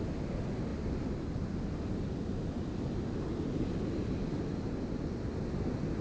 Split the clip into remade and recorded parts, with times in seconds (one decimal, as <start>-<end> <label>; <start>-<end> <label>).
0.0-6.0 recorded